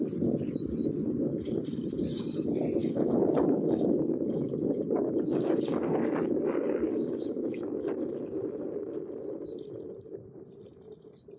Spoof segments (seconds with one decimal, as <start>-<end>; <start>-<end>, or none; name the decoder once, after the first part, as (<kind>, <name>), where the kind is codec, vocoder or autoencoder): 2.8-7.9 (codec, DAC)